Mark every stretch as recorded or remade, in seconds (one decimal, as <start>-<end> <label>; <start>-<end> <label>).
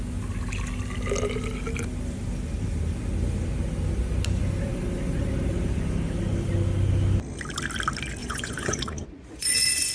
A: 0.0-8.2 recorded; 8.2-9.9 remade